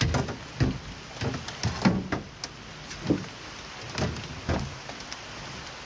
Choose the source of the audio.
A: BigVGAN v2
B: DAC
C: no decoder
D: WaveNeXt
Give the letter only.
C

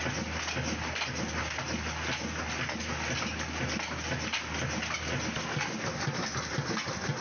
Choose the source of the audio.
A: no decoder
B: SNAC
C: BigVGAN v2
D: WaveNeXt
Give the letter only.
A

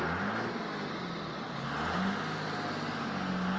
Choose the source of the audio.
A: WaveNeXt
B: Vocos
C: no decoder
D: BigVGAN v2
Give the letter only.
C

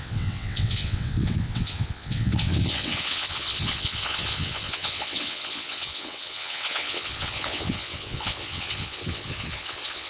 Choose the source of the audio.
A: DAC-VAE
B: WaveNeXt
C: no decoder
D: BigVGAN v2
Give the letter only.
B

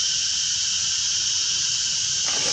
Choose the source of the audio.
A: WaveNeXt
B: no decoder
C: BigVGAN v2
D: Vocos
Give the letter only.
B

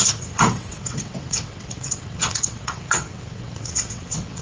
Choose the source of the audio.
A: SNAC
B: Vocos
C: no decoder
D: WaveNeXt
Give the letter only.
D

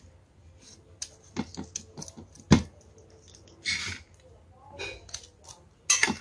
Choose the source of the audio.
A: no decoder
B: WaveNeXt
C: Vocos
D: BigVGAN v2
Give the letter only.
A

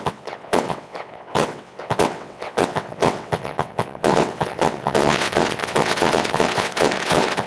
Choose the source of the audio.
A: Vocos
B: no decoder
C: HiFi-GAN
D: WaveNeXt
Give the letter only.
D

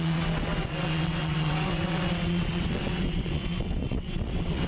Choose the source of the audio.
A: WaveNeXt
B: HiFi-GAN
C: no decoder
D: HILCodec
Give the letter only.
A